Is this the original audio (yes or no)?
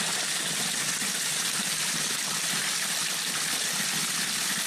yes